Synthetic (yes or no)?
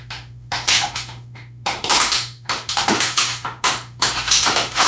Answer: yes